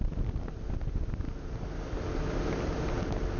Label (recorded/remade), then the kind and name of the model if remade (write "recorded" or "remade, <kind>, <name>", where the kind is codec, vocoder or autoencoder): recorded